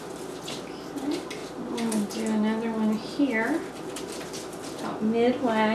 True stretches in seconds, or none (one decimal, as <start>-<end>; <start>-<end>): 0.0-5.7